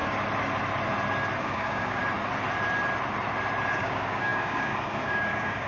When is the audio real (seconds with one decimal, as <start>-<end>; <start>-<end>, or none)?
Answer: 0.0-1.4; 2.0-3.8